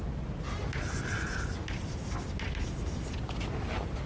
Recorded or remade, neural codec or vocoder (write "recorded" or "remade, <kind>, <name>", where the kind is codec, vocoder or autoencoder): recorded